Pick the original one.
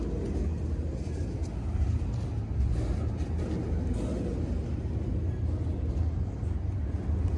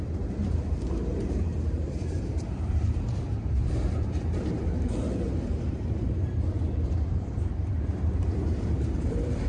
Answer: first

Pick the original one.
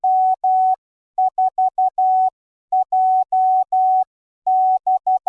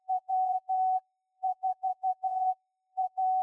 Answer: first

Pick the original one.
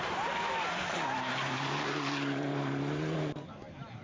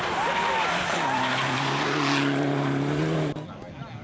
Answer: second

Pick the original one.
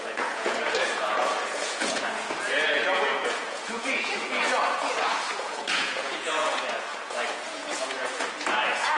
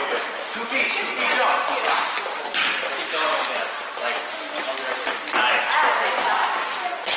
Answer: second